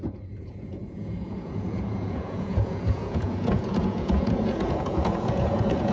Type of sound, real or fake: fake